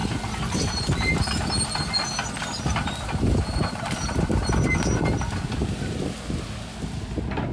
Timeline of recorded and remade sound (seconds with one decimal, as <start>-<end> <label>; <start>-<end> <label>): 0.0-7.5 recorded